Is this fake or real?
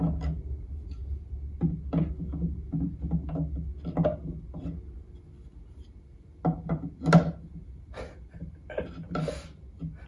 real